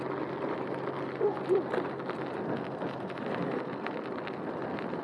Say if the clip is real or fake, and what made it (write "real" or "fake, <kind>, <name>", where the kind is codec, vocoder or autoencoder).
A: real